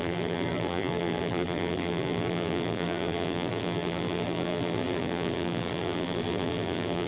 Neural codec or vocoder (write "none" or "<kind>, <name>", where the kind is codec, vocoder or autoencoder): vocoder, BigVGAN v2